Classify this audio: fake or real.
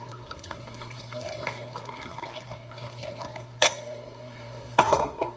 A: fake